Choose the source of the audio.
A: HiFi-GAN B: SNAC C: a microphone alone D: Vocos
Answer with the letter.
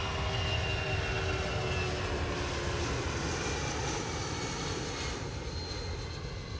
C